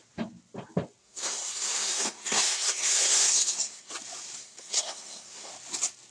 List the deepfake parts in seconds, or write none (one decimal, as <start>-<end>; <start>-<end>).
1.0-3.9; 4.4-5.5